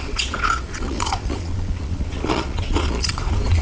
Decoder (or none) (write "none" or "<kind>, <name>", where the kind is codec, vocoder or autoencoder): vocoder, Vocos